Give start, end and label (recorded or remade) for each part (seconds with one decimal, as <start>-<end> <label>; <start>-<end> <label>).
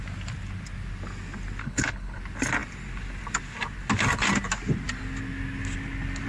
0.0-1.6 recorded; 1.6-2.2 remade; 2.2-6.3 recorded